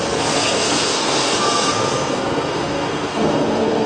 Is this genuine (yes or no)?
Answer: no